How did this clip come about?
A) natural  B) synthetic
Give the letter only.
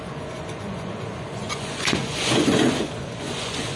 B